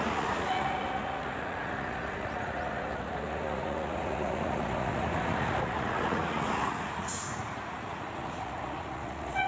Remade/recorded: remade